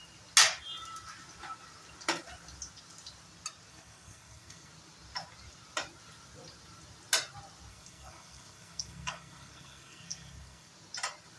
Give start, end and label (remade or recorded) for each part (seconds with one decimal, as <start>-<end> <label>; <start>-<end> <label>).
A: 0.0-3.7 recorded; 3.7-4.7 remade; 4.7-7.7 recorded; 7.7-10.7 remade; 10.7-11.4 recorded